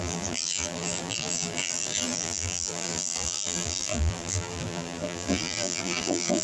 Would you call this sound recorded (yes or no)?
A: no